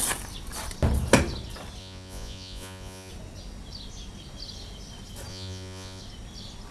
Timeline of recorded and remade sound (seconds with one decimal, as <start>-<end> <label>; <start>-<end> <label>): 0.0-1.8 recorded; 1.8-3.1 remade; 3.1-5.3 recorded; 5.3-6.0 remade; 6.0-6.7 recorded